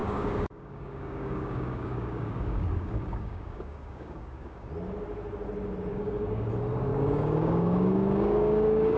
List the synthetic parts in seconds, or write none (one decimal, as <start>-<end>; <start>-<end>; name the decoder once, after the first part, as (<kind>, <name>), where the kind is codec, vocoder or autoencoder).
0.0-4.7 (codec, DAC); 5.9-6.5; 6.9-9.0